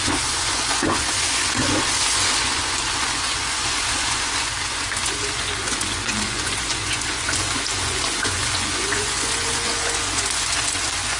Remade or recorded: remade